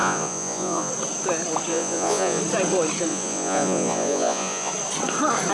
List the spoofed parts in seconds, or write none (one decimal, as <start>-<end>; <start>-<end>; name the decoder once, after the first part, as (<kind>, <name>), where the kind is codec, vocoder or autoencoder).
0.0-0.9 (vocoder, Vocos); 1.7-2.4; 3.1-4.7